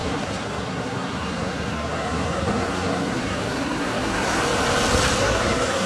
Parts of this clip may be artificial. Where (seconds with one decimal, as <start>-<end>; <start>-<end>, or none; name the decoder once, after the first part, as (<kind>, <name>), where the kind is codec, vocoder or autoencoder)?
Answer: 0.0-4.4 (codec, SNAC); 5.2-5.9